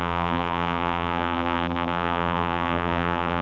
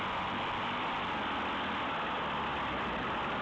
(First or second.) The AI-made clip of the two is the first